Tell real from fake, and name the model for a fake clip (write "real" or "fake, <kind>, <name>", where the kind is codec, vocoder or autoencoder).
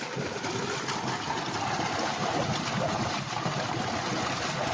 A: real